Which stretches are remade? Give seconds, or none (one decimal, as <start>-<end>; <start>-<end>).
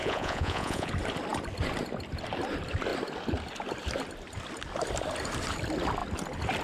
0.0-0.9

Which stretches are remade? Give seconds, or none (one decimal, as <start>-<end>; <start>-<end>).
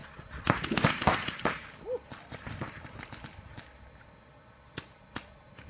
none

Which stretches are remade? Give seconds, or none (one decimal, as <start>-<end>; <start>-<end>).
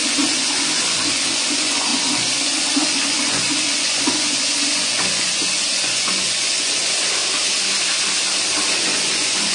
0.0-7.2; 8.7-9.5